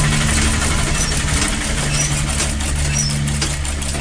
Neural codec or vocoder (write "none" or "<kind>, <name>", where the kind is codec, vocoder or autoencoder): none